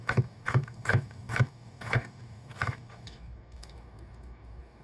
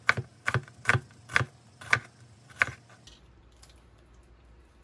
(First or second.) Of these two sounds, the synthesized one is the first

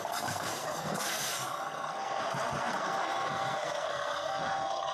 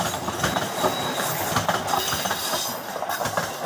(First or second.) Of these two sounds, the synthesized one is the first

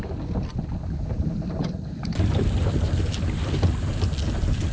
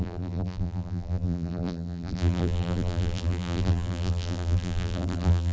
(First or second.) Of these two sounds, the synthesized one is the second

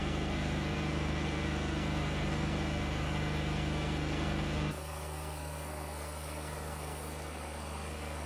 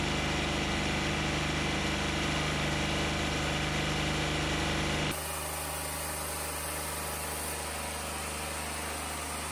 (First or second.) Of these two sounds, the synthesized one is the first